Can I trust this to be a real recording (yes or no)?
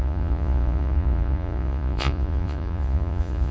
no